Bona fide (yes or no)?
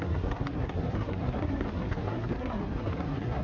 no